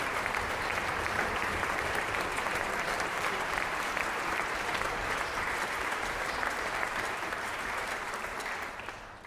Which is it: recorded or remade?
remade